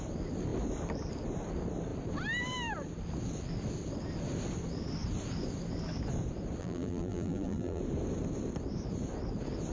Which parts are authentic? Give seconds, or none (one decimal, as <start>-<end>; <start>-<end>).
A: 0.0-6.6; 7.8-9.7